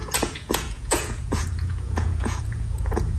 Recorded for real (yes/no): no